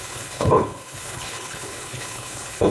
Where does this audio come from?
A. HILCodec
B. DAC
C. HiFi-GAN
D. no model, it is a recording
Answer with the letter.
A